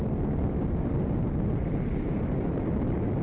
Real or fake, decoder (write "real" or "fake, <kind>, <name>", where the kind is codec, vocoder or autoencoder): real